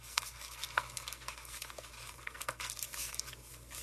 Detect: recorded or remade remade